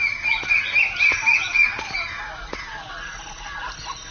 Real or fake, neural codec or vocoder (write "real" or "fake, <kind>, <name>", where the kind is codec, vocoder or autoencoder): real